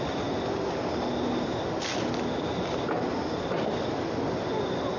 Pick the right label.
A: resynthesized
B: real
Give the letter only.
B